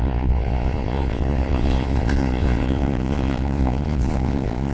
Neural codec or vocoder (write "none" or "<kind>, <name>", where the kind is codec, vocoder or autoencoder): vocoder, Vocos